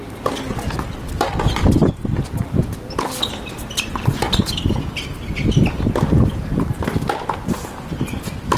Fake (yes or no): no